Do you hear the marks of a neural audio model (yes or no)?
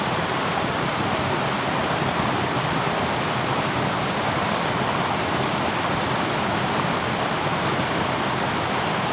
no